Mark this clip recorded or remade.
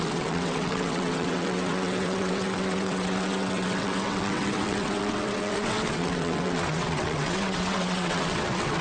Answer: remade